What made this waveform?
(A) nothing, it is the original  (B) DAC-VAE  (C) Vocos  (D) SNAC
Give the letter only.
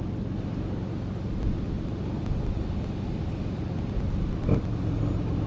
A